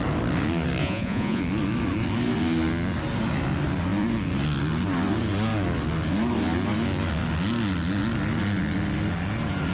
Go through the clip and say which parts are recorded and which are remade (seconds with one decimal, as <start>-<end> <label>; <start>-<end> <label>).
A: 0.0-0.8 recorded; 0.8-1.4 remade; 1.4-9.7 recorded